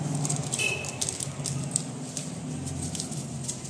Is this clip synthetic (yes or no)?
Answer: no